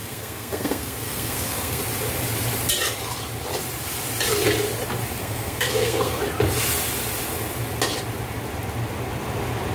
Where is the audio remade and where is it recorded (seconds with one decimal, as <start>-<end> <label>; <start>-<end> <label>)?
0.0-1.8 remade; 1.8-5.2 recorded; 5.2-6.2 remade; 6.2-9.7 recorded

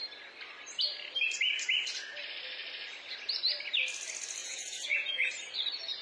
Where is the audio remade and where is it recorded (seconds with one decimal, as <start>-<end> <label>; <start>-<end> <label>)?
0.0-4.4 recorded; 4.4-5.3 remade; 5.3-6.0 recorded

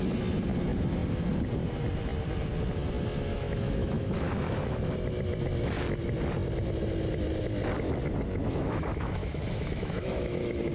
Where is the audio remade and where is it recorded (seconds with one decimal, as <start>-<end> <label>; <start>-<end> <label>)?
0.0-3.3 recorded; 3.3-4.8 remade; 4.8-8.4 recorded; 8.4-10.7 remade

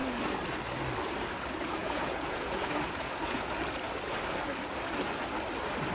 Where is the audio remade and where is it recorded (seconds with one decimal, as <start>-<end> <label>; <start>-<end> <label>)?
0.0-1.8 recorded; 1.8-3.5 remade; 3.5-5.9 recorded

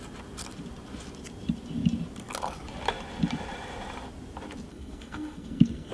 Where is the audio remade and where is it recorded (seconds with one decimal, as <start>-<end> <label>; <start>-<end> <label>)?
0.0-4.7 recorded; 4.7-5.9 remade

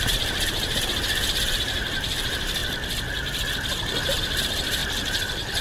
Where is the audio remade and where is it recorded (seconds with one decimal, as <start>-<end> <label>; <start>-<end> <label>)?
0.0-2.6 remade; 2.6-4.2 recorded; 4.2-4.8 remade; 4.8-5.6 recorded

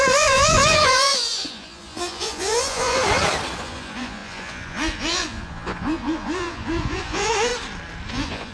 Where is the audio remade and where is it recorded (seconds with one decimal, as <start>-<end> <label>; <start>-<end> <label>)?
0.0-3.0 remade; 3.0-3.6 recorded; 3.6-7.5 remade; 7.5-8.1 recorded; 8.1-8.5 remade

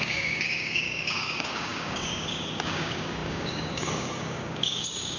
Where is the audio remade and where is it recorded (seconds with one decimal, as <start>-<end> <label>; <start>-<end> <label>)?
0.0-5.2 remade